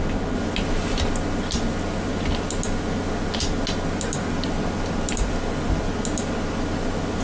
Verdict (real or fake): real